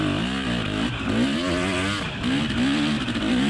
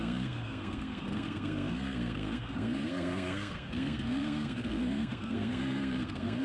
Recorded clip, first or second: first